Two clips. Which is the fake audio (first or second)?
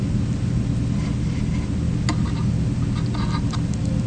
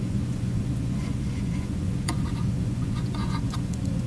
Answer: second